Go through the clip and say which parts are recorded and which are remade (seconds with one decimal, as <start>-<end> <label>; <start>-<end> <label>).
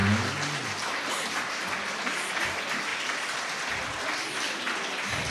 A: 0.0-2.9 recorded; 2.9-3.6 remade; 3.6-5.3 recorded